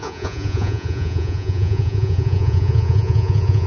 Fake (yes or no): yes